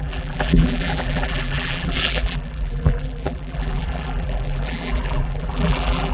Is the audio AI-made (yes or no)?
yes